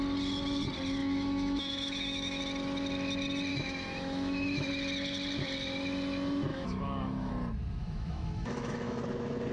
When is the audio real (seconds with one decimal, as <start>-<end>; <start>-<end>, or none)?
0.0-1.0; 2.4-3.5; 4.7-6.5; 7.3-7.8; 9.0-9.5